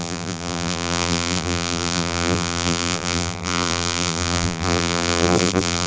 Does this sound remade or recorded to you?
remade